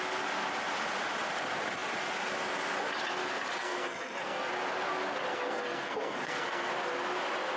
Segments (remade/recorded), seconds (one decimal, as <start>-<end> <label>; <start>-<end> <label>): 0.0-3.5 recorded; 3.5-4.5 remade; 4.5-5.3 recorded; 5.3-6.7 remade; 6.7-7.6 recorded